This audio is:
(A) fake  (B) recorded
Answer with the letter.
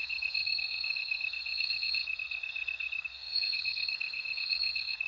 A